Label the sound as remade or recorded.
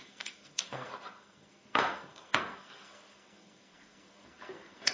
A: remade